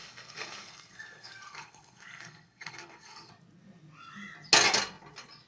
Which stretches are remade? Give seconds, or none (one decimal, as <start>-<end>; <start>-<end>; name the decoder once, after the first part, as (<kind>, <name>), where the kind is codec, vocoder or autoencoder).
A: 0.0-3.3 (codec, SNAC)